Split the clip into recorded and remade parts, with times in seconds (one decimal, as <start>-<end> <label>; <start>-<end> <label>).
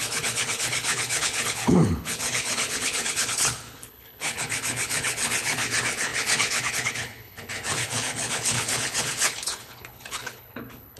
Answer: 0.0-11.0 remade